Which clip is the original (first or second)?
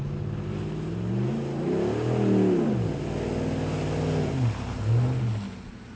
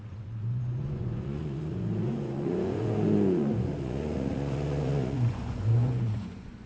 first